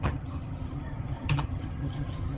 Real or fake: fake